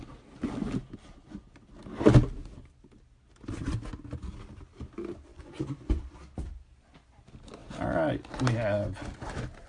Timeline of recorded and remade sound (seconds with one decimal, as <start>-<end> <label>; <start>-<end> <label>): 0.0-5.3 recorded; 5.3-6.0 remade; 6.0-9.7 recorded